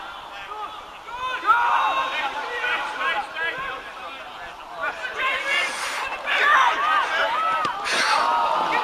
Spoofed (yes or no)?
no